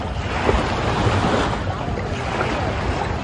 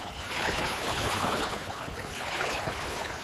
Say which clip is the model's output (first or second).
second